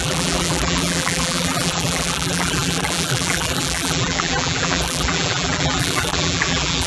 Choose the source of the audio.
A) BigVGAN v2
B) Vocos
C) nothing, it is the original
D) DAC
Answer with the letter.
A